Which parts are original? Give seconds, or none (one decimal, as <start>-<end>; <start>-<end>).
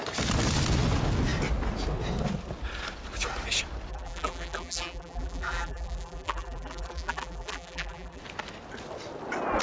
0.0-3.9; 8.2-9.6